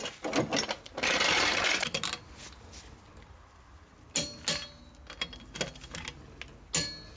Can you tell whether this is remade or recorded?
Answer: recorded